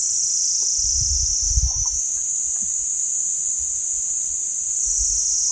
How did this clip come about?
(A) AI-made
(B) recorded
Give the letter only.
B